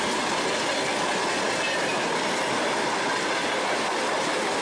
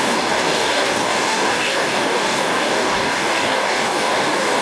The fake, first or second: second